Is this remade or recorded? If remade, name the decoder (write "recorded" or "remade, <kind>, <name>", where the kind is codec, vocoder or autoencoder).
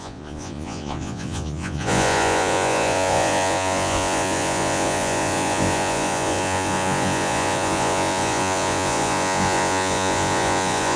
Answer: remade, vocoder, Vocos